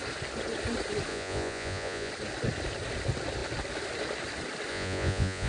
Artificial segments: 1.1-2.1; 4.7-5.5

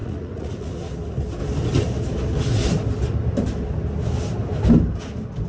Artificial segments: 0.0-0.7